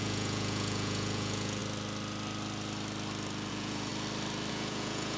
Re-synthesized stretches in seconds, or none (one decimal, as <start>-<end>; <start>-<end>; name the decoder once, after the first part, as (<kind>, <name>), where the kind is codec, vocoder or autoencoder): 0.0-1.6 (vocoder, Vocos); 3.5-3.9; 4.5-5.2